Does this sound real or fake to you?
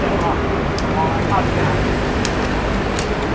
real